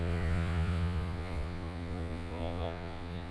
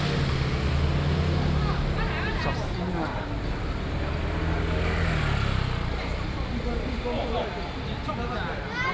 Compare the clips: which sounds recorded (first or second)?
second